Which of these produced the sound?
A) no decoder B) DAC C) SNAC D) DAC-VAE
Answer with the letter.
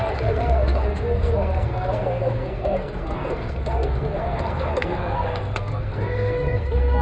C